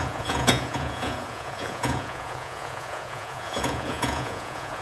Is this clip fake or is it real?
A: fake